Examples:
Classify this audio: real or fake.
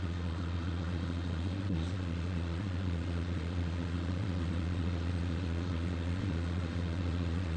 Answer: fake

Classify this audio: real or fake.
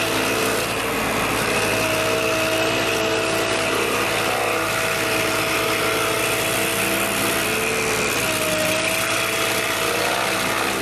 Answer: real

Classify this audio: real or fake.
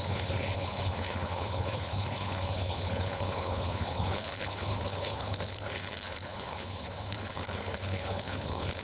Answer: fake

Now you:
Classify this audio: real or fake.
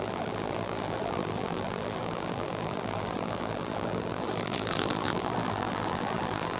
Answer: fake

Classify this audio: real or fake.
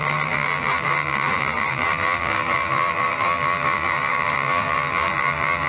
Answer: fake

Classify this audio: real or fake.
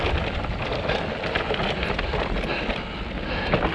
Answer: real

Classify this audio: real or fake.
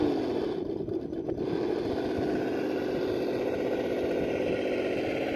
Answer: real